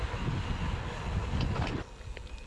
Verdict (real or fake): real